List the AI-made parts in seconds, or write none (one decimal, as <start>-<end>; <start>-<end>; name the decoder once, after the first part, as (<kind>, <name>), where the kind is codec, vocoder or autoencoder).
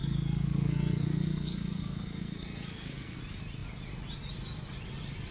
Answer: 0.0-3.2 (codec, SNAC)